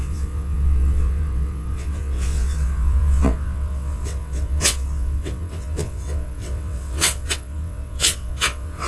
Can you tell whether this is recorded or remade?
remade